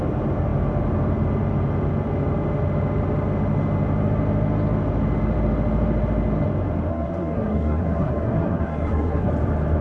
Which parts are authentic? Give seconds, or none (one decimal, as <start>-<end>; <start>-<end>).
0.0-6.9; 9.3-9.8